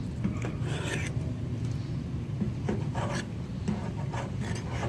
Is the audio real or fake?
real